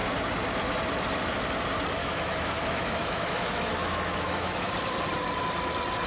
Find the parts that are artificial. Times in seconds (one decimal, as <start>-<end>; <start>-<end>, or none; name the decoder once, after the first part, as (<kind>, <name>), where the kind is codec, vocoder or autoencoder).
2.0-4.7 (autoencoder, DAC-VAE)